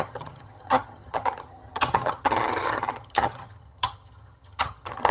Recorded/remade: remade